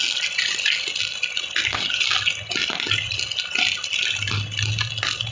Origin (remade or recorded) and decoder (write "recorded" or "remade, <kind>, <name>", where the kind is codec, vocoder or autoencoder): recorded